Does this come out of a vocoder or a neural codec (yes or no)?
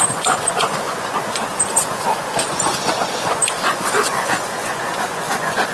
yes